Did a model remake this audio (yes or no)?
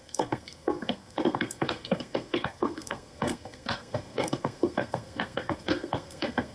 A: yes